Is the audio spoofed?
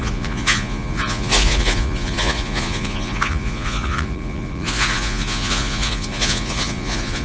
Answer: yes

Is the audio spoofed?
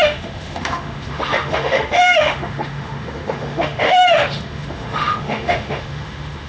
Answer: yes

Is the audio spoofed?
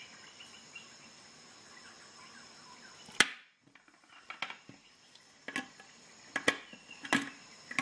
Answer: no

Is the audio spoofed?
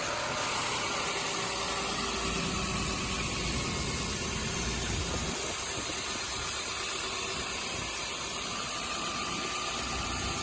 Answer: no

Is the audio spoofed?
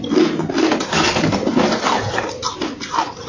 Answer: no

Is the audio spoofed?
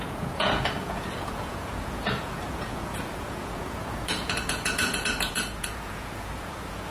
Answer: yes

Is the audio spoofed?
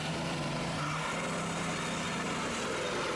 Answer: no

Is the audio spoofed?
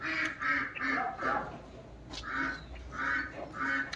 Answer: no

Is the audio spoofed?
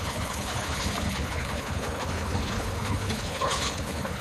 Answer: yes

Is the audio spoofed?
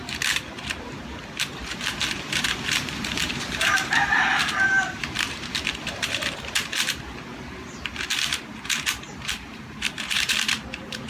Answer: yes